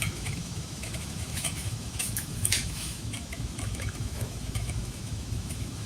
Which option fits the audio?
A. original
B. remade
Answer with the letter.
B